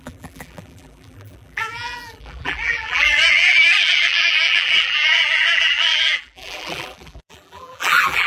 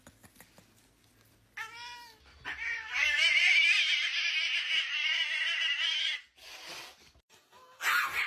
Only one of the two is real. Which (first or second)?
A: second